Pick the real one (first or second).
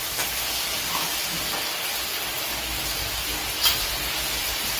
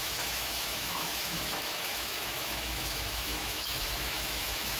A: first